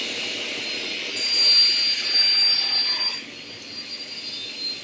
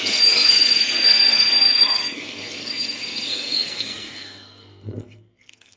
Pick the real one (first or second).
first